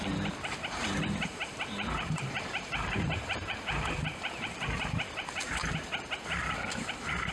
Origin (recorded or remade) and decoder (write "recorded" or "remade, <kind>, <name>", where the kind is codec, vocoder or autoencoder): remade, vocoder, BigVGAN v2